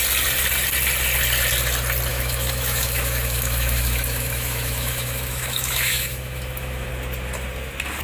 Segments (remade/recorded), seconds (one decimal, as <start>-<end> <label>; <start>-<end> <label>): 0.0-2.1 recorded; 2.1-6.9 remade; 6.9-8.0 recorded